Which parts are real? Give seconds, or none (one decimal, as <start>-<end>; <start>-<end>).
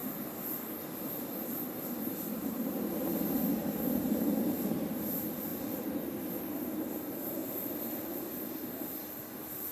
0.0-2.0; 5.5-6.3; 7.4-8.7